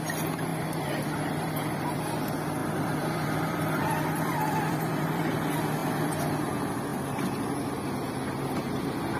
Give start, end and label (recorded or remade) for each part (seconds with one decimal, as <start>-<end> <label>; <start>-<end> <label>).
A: 0.0-0.5 recorded; 0.5-2.0 remade; 2.0-2.6 recorded; 2.6-5.3 remade; 5.3-5.8 recorded; 5.8-6.5 remade; 6.5-9.2 recorded